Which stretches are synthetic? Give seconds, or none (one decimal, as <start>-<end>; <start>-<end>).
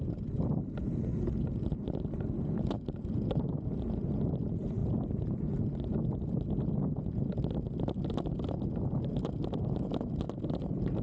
none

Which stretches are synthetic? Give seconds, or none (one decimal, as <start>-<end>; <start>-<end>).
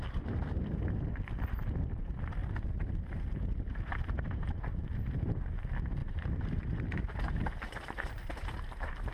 2.4-5.4; 6.0-9.1